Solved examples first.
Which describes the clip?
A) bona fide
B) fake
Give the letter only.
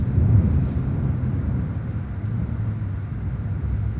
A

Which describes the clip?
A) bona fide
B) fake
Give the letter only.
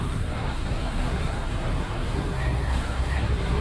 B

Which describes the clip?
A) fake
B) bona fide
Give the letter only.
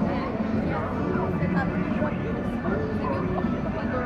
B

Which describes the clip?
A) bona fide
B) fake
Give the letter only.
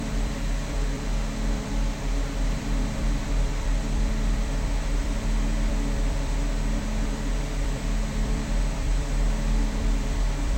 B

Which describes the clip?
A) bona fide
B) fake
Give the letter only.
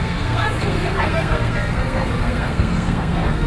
B